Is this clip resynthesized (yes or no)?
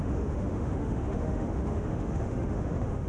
yes